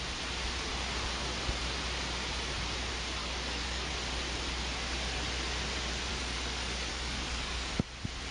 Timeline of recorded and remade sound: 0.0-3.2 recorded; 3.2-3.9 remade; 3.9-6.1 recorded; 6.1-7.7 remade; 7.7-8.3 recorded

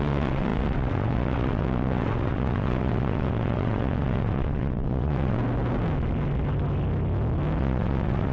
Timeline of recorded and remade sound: 0.0-5.4 remade; 5.4-7.6 recorded; 7.6-8.3 remade

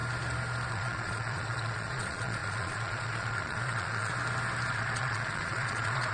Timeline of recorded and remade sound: 0.0-0.7 recorded; 0.7-4.1 remade; 4.1-4.7 recorded; 4.7-6.1 remade

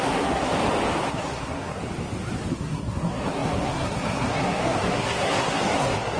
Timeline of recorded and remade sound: 0.0-0.5 remade; 0.5-1.1 recorded; 1.1-1.8 remade; 1.8-2.5 recorded; 2.5-6.2 remade

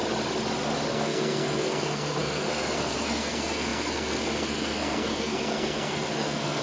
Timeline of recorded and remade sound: 0.0-0.9 recorded; 0.9-6.6 remade